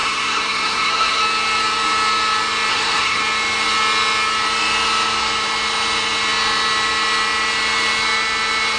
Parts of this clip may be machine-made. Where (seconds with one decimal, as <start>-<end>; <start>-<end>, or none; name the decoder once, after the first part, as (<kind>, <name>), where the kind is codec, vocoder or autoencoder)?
0.0-1.2 (codec, SNAC); 2.7-3.2